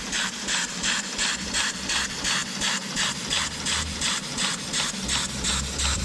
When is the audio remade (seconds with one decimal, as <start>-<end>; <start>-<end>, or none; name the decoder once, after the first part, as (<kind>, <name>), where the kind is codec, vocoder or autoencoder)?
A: 0.0-2.4 (vocoder, BigVGAN v2); 3.1-4.2; 5.5-6.0